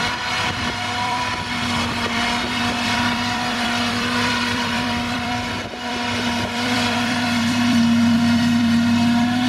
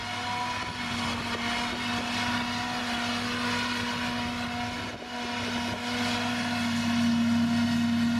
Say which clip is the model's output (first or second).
first